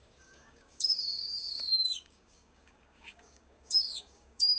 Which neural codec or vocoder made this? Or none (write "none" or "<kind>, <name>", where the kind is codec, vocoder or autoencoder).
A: codec, DAC